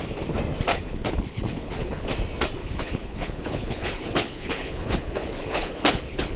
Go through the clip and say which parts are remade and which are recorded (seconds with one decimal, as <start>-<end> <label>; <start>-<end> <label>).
0.0-0.7 recorded; 0.7-2.1 remade; 2.1-2.6 recorded; 2.6-6.4 remade